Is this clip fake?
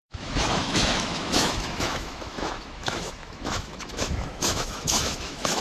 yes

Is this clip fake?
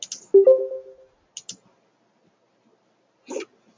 no